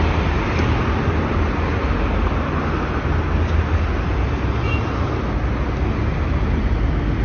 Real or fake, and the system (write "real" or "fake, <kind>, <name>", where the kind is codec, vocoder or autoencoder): real